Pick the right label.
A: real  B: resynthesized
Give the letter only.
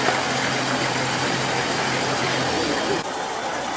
A